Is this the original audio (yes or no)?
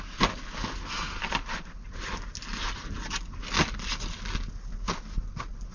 yes